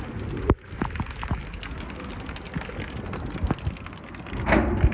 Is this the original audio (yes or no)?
yes